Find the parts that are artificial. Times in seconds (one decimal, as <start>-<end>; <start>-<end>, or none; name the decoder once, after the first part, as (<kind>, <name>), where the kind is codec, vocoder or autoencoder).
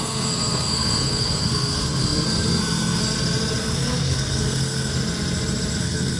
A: 0.0-3.0 (codec, SNAC); 3.6-4.9; 5.8-6.2